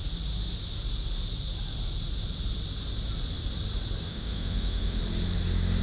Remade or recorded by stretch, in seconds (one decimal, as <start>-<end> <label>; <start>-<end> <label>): 0.0-4.1 recorded; 4.1-5.0 remade; 5.0-5.8 recorded